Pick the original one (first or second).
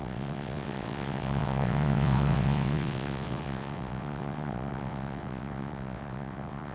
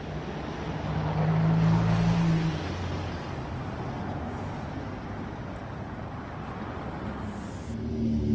second